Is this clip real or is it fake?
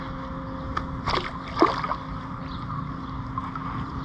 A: real